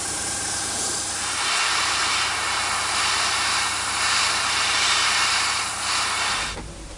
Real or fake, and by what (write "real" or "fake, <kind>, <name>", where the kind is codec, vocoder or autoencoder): fake, vocoder, BigVGAN v2